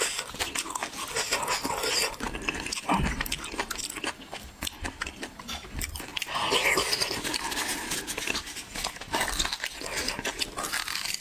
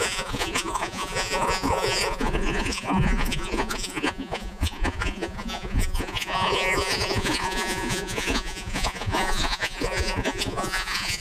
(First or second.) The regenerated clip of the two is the second